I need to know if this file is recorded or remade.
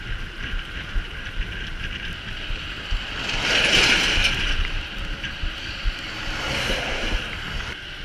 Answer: recorded